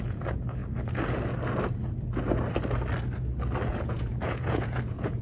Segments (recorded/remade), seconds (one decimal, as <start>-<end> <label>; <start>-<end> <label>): 0.0-0.6 remade; 0.6-3.7 recorded; 3.7-5.2 remade